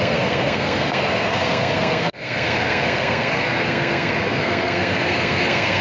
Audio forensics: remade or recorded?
remade